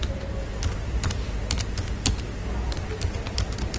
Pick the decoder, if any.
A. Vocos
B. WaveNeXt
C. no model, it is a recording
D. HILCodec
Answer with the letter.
C